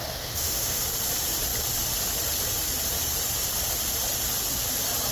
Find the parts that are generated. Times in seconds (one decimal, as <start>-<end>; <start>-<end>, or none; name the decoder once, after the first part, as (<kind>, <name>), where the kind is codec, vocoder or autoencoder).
0.0-0.8 (autoencoder, DAC-VAE)